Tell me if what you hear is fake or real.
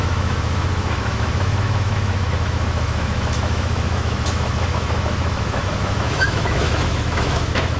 fake